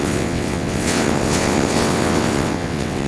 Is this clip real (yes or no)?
no